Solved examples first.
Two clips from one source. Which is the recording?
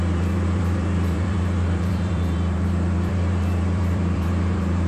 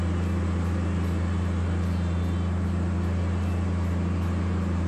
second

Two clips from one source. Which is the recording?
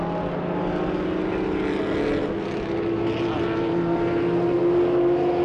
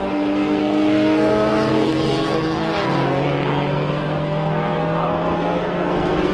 first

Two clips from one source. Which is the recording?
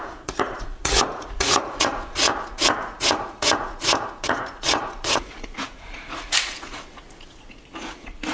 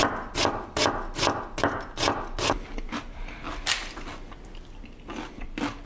second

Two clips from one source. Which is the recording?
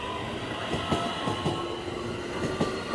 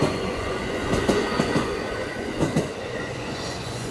first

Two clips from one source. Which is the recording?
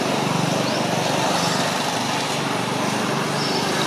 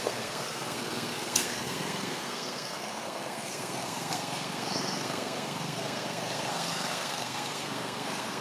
first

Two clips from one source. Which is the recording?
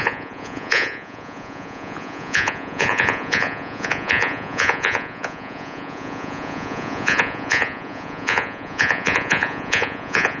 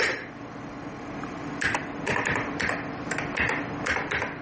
second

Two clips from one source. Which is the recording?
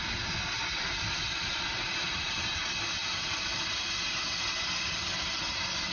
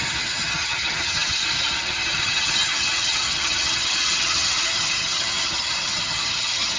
first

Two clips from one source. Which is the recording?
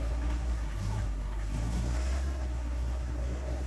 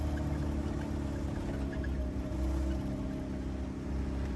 second